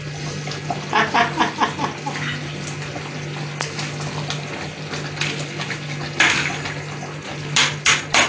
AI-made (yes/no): no